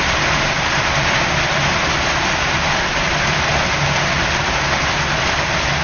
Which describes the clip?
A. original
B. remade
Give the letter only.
A